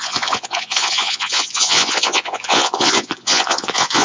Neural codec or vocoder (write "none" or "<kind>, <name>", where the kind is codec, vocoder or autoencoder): vocoder, Vocos